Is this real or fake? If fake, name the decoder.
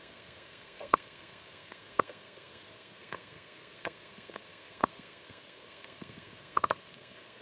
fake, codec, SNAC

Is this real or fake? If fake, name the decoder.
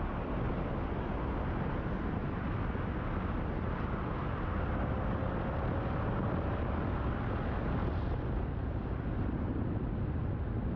real